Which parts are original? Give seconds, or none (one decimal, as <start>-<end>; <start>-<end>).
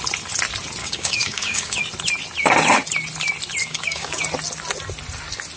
0.0-0.8; 1.8-3.6; 4.2-5.6